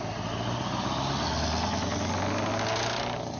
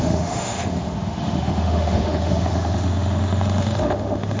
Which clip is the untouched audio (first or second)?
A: first